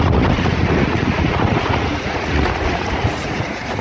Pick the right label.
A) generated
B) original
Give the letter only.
A